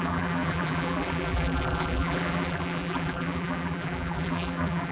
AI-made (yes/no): yes